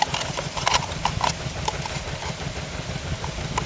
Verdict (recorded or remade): recorded